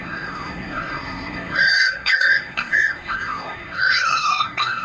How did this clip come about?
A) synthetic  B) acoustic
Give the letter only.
A